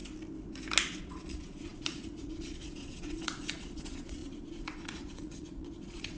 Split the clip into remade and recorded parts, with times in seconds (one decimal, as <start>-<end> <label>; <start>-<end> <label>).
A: 0.0-1.0 recorded; 1.0-6.2 remade